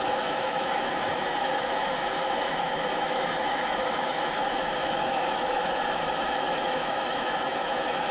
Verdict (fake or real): fake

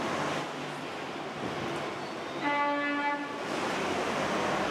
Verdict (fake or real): real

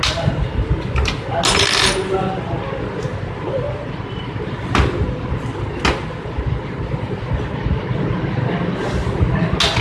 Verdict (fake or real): real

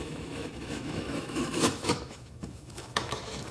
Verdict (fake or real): fake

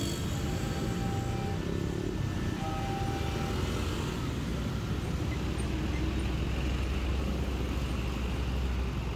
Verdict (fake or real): real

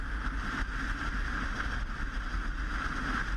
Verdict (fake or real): real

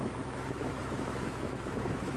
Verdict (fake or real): fake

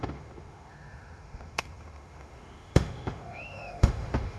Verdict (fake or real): fake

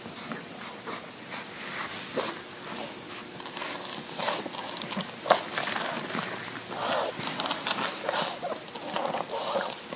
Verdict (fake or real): real